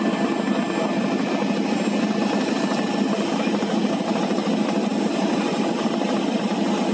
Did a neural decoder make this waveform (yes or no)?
no